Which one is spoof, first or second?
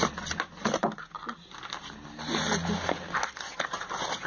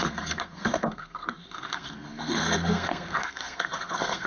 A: second